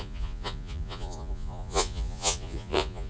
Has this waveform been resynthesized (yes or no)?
yes